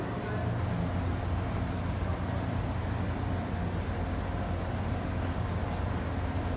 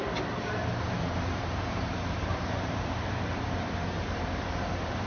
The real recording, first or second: first